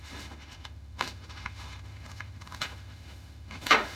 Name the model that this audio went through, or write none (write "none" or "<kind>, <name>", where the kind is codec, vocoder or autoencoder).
autoencoder, DAC-VAE